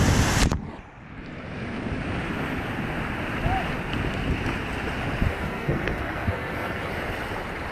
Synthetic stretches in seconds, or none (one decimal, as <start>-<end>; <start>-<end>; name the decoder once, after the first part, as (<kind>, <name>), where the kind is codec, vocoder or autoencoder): 5.3-6.9 (codec, SNAC)